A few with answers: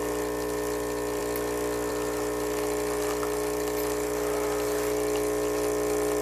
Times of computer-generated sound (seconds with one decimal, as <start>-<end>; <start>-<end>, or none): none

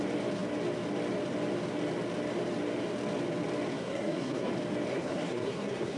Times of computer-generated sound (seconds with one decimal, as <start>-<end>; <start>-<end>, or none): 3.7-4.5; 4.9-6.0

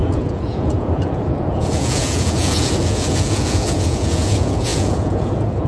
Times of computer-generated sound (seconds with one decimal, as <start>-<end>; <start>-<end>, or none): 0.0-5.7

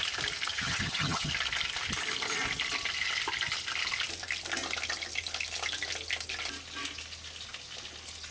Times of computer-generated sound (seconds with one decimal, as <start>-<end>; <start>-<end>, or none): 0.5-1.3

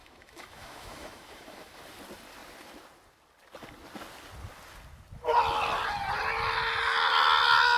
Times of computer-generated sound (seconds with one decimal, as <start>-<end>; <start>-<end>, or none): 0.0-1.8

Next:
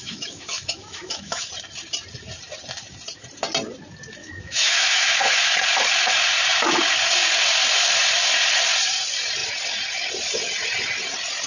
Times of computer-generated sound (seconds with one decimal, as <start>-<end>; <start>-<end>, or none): 0.0-1.5; 4.2-5.5

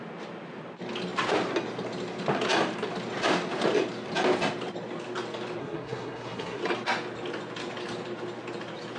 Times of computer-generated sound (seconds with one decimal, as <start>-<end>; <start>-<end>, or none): 5.6-6.6